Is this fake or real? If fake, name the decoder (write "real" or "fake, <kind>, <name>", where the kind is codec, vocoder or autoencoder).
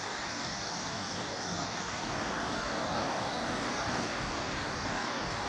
fake, codec, DAC